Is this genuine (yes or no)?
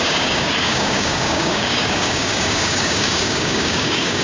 no